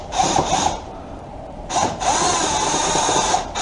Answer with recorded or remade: remade